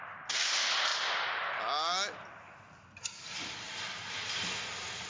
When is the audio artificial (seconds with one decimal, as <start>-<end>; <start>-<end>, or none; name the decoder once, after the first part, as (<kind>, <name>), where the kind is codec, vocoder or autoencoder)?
none